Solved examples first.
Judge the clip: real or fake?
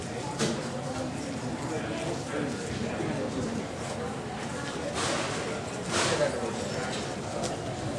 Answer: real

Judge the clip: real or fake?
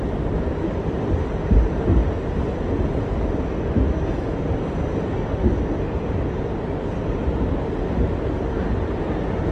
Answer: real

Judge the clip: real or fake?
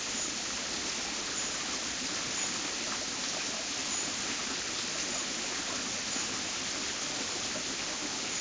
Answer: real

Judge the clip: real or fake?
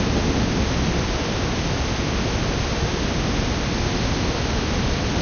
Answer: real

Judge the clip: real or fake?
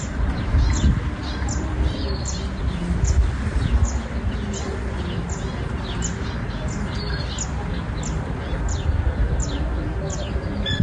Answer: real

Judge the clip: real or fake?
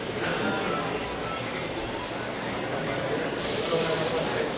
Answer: real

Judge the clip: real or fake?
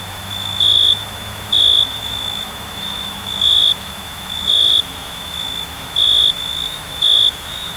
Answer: fake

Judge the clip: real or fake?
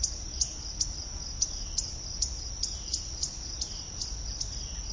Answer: real